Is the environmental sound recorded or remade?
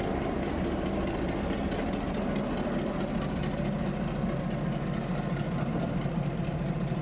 recorded